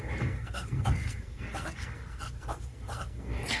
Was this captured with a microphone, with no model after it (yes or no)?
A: no